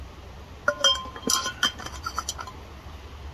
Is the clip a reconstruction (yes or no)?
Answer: no